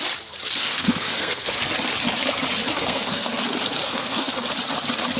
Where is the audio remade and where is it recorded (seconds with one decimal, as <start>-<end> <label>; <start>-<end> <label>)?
0.0-0.6 recorded; 0.6-1.6 remade; 1.6-2.8 recorded; 2.8-3.4 remade; 3.4-3.8 recorded; 3.8-4.3 remade; 4.3-5.2 recorded